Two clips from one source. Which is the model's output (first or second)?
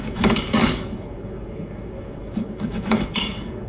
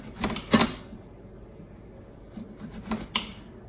first